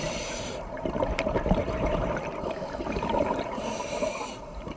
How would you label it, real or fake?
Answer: fake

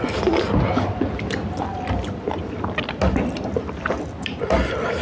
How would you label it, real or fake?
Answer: real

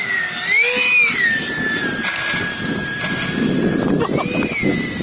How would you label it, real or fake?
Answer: real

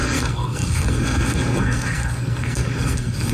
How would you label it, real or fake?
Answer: fake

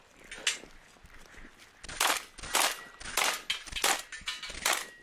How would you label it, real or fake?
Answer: real